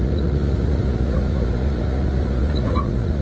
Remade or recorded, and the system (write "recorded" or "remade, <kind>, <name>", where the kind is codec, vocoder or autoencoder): remade, vocoder, Vocos